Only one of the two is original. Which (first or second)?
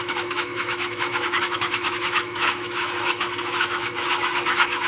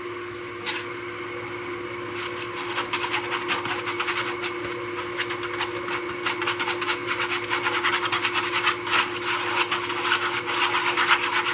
second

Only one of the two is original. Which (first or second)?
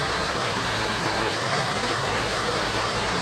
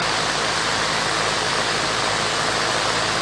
second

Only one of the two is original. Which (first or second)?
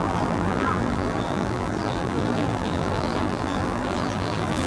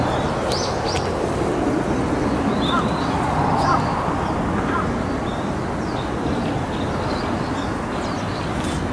second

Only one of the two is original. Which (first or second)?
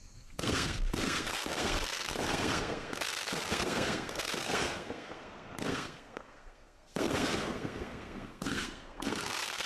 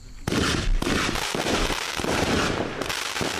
second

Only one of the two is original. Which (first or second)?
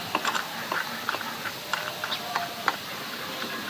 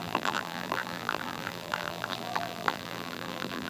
first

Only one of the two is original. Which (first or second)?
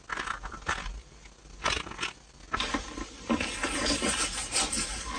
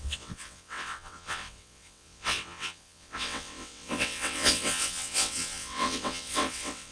first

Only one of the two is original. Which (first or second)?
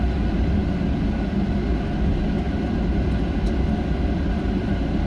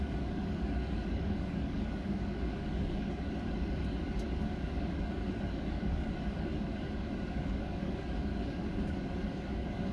first